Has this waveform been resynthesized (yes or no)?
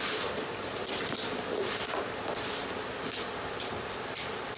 no